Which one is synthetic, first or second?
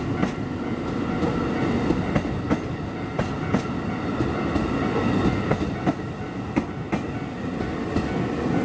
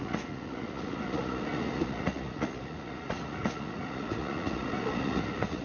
second